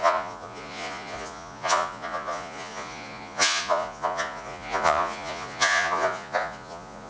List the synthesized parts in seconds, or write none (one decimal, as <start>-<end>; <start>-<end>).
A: 0.0-7.1